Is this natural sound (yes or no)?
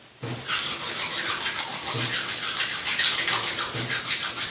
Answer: yes